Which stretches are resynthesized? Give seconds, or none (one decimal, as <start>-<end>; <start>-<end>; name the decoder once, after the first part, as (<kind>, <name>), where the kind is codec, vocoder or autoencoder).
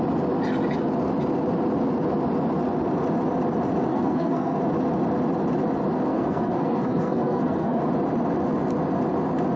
3.9-4.6 (codec, SNAC); 6.1-7.8